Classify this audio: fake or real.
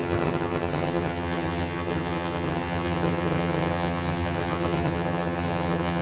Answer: fake